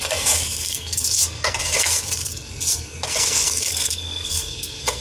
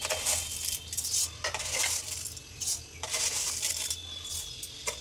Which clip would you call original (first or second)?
second